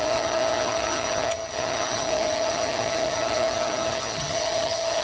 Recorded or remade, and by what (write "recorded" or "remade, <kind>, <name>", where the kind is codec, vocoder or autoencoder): remade, vocoder, HiFi-GAN